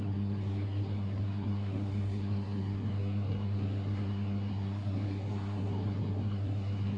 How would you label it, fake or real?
fake